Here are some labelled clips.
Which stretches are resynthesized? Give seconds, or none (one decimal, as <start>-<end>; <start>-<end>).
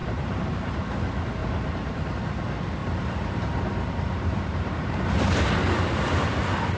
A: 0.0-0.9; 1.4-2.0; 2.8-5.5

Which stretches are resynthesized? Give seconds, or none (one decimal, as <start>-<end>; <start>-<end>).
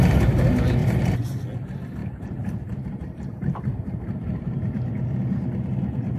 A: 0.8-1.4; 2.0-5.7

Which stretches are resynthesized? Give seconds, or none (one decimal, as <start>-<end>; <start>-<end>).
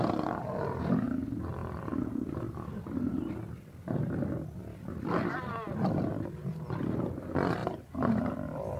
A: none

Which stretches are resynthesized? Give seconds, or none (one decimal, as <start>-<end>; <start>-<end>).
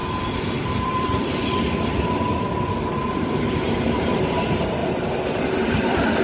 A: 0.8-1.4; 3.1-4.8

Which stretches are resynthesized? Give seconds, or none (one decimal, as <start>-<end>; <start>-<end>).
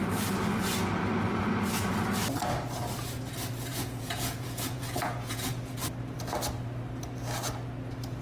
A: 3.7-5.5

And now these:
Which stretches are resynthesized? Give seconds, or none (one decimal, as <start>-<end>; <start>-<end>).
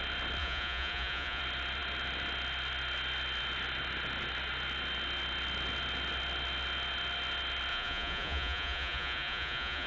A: 0.4-1.4; 7.7-9.9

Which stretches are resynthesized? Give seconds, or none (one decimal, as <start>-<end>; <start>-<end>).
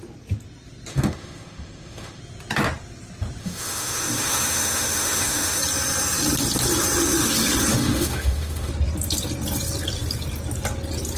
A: 0.9-2.2; 3.4-5.6; 7.7-8.7